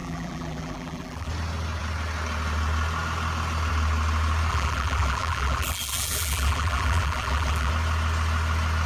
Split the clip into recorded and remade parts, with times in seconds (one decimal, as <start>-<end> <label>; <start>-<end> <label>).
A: 0.0-1.3 remade; 1.3-4.5 recorded; 4.5-7.7 remade; 7.7-8.9 recorded